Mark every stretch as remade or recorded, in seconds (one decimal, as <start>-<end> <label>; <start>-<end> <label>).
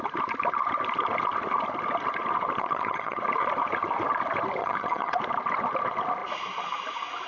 0.0-2.6 recorded; 2.6-3.2 remade; 3.2-4.6 recorded; 4.6-5.2 remade; 5.2-7.3 recorded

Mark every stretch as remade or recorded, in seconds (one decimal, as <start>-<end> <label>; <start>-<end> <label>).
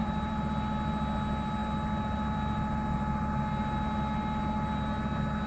0.0-0.5 remade; 0.5-5.5 recorded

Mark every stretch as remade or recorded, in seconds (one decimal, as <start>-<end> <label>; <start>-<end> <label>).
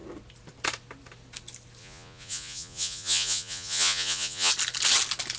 0.0-1.8 recorded; 1.8-4.5 remade; 4.5-5.4 recorded